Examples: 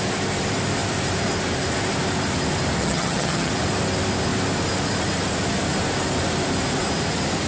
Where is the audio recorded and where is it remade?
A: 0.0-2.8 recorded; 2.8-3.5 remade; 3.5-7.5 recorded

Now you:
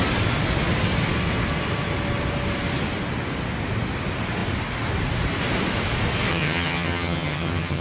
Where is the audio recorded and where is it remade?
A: 0.0-6.3 recorded; 6.3-7.8 remade

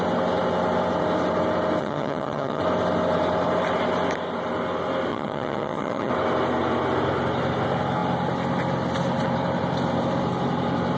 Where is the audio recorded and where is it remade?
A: 0.0-1.8 recorded; 1.8-2.6 remade; 2.6-5.1 recorded; 5.1-6.1 remade; 6.1-11.0 recorded

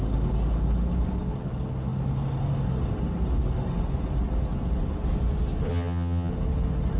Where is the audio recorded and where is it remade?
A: 0.0-5.7 recorded; 5.7-6.3 remade; 6.3-7.0 recorded

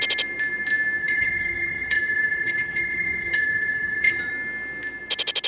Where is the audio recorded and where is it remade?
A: 0.0-1.0 recorded; 1.0-4.3 remade; 4.3-5.5 recorded

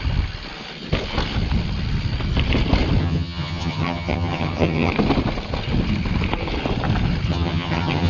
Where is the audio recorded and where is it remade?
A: 0.0-3.0 recorded; 3.0-4.9 remade; 4.9-7.3 recorded; 7.3-8.1 remade

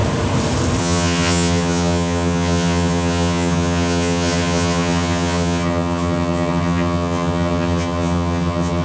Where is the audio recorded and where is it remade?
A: 0.0-0.8 recorded; 0.8-8.8 remade

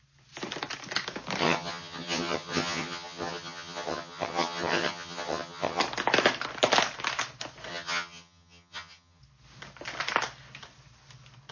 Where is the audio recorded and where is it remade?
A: 0.0-1.4 recorded; 1.4-5.8 remade; 5.8-7.7 recorded; 7.7-9.2 remade; 9.2-11.5 recorded